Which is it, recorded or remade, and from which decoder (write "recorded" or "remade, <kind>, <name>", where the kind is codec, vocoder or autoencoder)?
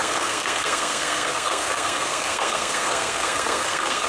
remade, codec, SNAC